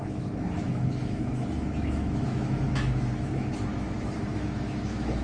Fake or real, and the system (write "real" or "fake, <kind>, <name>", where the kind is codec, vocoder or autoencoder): fake, autoencoder, DAC-VAE